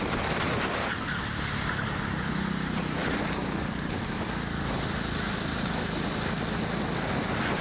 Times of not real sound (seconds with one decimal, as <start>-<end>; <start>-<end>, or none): 3.0-4.2